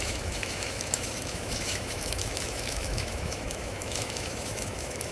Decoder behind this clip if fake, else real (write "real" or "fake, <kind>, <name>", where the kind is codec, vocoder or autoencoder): fake, autoencoder, DAC-VAE